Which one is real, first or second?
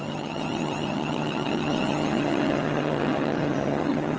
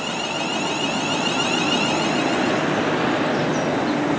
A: second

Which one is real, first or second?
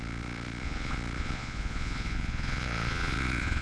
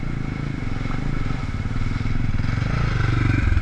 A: second